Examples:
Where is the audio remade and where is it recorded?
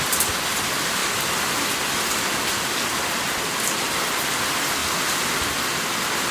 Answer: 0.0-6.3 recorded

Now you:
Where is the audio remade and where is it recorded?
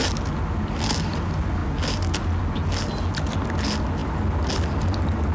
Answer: 0.0-5.3 recorded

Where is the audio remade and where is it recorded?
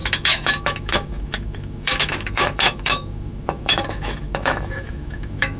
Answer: 0.0-5.6 remade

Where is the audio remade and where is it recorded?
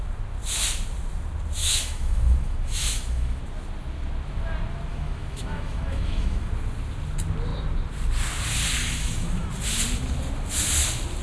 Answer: 0.0-1.6 recorded; 1.6-3.4 remade; 3.4-4.9 recorded; 4.9-6.5 remade; 6.5-8.8 recorded; 8.8-9.5 remade; 9.5-11.2 recorded